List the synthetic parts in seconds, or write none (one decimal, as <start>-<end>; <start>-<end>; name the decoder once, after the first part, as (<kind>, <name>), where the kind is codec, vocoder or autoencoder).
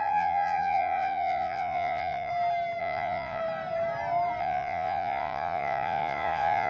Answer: 0.0-2.3 (vocoder, Vocos); 2.8-3.4; 4.4-6.7